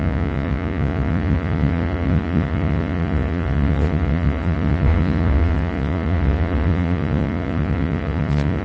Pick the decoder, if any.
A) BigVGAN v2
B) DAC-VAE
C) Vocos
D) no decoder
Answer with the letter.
C